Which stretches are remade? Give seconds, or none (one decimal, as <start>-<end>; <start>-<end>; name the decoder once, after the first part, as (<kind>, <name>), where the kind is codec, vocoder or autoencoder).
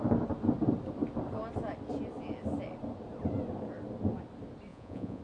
4.7-5.2 (vocoder, Vocos)